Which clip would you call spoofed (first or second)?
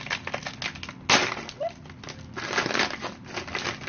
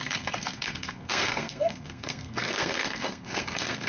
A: second